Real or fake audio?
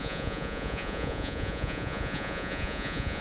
fake